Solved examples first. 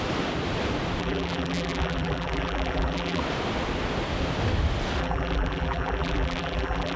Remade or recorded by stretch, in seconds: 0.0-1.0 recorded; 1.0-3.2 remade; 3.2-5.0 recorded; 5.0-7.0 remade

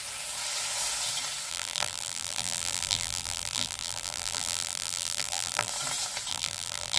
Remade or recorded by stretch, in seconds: 0.0-1.5 recorded; 1.5-5.7 remade; 5.7-6.3 recorded; 6.3-7.0 remade